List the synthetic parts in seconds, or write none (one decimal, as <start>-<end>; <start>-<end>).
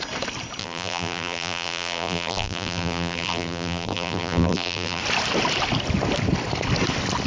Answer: 0.6-5.0